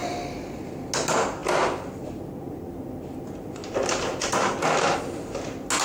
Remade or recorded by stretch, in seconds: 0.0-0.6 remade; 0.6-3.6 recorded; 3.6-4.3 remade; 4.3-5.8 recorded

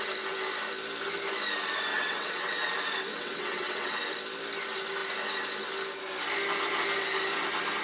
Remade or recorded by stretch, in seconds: 0.0-1.9 recorded; 1.9-2.7 remade; 2.7-3.1 recorded; 3.1-4.0 remade; 4.0-7.8 recorded

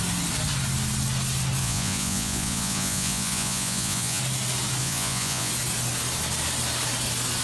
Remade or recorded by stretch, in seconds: 0.0-1.6 recorded; 1.6-4.2 remade; 4.2-4.8 recorded; 4.8-5.5 remade; 5.5-7.4 recorded

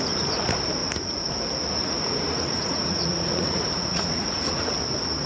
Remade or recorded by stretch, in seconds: 0.0-0.8 recorded; 0.8-1.3 remade; 1.3-1.8 recorded; 1.8-4.7 remade; 4.7-5.3 recorded

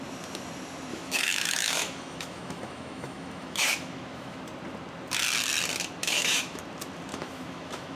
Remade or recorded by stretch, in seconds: 0.0-0.9 recorded; 0.9-4.4 remade; 4.4-6.0 recorded; 6.0-6.6 remade; 6.6-7.1 recorded; 7.1-8.0 remade

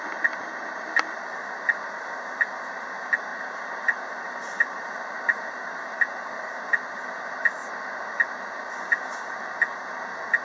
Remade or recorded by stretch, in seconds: 0.0-3.3 recorded; 3.3-4.9 remade; 4.9-10.4 recorded